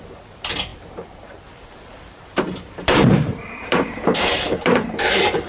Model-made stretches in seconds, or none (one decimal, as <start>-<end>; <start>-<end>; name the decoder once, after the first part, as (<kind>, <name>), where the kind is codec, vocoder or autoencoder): 0.0-5.5 (vocoder, BigVGAN v2)